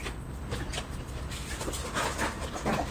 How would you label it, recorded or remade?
recorded